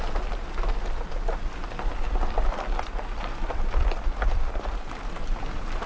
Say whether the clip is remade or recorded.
recorded